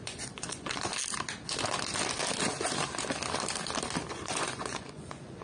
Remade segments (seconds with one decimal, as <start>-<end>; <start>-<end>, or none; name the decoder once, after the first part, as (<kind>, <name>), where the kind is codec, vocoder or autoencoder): 0.0-0.9 (vocoder, Vocos); 4.1-5.4